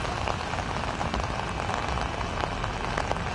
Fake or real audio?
real